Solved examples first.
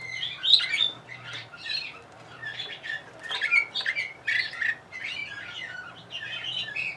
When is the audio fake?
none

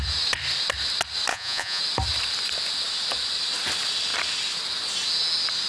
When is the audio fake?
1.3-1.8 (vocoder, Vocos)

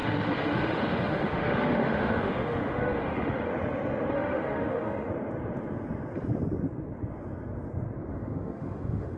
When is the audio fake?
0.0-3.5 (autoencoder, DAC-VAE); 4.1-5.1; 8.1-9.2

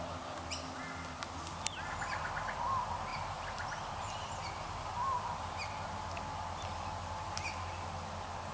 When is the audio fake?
none